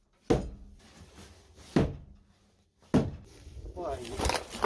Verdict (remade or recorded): recorded